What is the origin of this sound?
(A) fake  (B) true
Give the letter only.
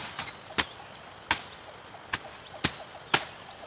B